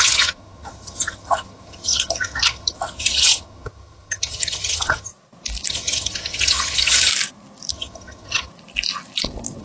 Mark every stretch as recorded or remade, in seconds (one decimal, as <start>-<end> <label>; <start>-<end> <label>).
0.0-5.1 remade; 5.1-5.7 recorded; 5.7-7.1 remade; 7.1-7.7 recorded; 7.7-8.5 remade; 8.5-9.6 recorded